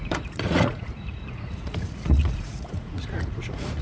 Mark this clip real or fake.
fake